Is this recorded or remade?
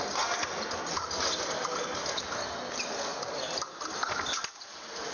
recorded